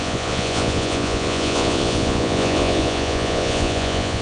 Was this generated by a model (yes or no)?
yes